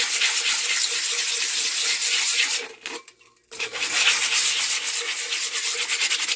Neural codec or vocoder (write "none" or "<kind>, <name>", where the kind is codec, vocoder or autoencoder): none